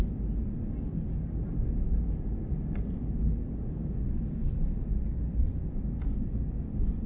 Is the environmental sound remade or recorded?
recorded